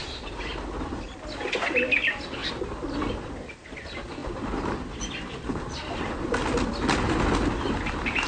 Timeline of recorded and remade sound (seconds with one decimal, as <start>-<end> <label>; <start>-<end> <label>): 0.0-8.3 recorded